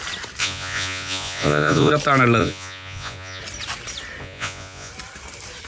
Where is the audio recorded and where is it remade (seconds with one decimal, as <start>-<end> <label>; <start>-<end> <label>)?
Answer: 0.0-0.4 recorded; 0.4-1.9 remade; 1.9-2.4 recorded; 2.4-3.4 remade; 3.4-4.2 recorded; 4.2-4.9 remade; 4.9-5.7 recorded